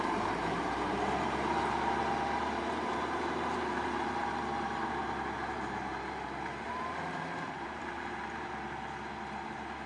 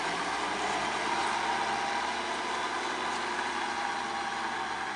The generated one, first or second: first